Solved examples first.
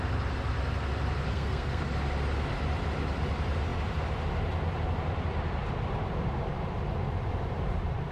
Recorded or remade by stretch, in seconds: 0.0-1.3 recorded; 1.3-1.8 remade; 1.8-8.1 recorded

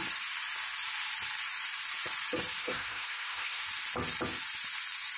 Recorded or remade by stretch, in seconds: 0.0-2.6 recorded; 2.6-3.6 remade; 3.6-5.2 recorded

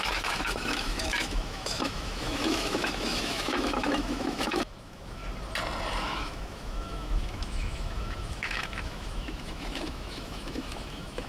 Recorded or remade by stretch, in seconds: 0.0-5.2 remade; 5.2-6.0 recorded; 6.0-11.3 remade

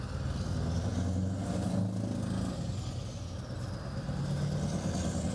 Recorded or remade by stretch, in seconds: 0.0-5.3 recorded

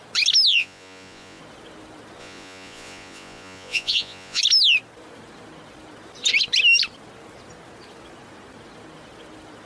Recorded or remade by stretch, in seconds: 0.0-0.5 recorded; 0.5-1.4 remade; 1.4-2.2 recorded; 2.2-4.4 remade; 4.4-9.7 recorded

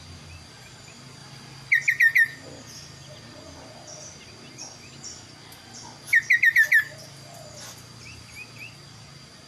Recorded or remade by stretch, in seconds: 0.0-9.5 recorded

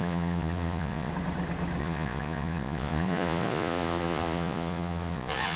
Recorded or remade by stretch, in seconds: 0.0-1.1 remade; 1.1-1.8 recorded; 1.8-5.6 remade

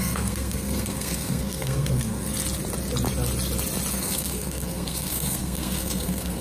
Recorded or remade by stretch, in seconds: 0.0-2.3 remade; 2.3-3.9 recorded; 3.9-6.4 remade